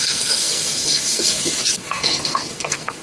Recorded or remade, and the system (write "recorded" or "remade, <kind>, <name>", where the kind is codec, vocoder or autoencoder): remade, codec, SNAC